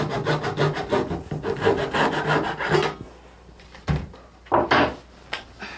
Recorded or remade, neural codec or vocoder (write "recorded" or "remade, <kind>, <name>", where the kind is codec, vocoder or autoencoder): recorded